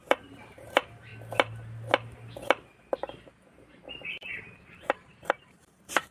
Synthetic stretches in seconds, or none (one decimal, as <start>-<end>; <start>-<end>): 0.0-1.1; 4.2-6.1